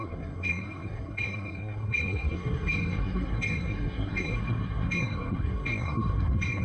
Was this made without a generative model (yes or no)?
no